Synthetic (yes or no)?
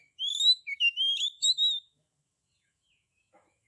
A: yes